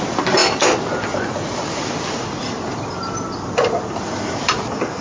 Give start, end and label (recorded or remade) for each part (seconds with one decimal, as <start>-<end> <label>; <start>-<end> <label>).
0.0-5.0 recorded